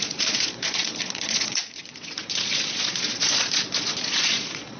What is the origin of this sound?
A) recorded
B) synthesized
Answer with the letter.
B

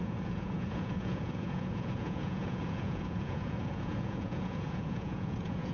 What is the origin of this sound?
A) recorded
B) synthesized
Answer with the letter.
B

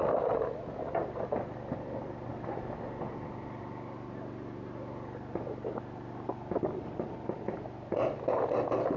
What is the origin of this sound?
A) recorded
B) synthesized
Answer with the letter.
A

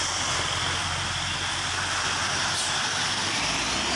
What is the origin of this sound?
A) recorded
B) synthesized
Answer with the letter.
A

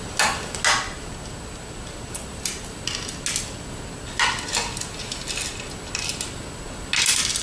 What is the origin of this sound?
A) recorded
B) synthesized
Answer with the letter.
A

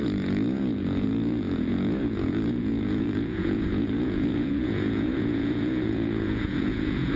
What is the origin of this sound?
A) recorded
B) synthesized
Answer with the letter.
B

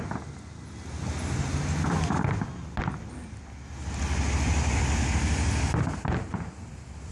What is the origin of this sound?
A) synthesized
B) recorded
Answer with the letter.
B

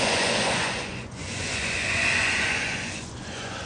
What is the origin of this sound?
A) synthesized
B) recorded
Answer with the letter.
A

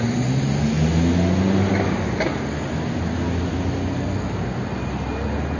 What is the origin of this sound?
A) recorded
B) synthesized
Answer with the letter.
A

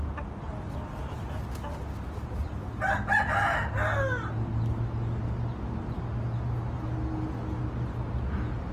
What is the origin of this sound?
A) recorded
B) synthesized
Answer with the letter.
A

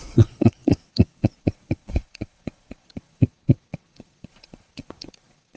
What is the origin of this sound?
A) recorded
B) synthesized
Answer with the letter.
B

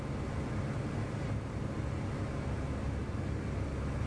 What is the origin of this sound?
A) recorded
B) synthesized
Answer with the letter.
A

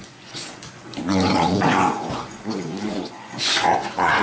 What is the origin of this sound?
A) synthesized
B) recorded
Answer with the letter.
A